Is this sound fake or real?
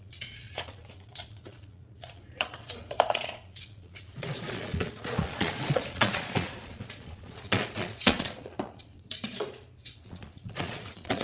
fake